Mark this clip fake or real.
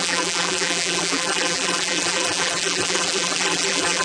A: fake